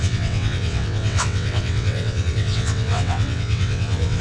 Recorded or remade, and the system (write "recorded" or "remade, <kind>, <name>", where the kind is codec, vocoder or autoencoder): remade, vocoder, WaveNeXt